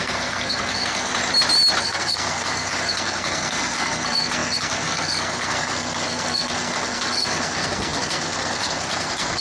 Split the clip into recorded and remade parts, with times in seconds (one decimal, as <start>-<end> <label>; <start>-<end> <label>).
0.0-1.1 remade; 1.1-1.8 recorded; 1.8-9.4 remade